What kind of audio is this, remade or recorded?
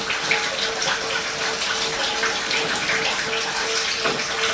recorded